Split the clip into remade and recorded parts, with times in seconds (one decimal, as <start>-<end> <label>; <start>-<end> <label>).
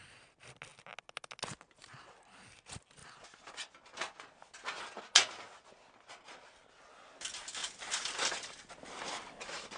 0.0-9.8 recorded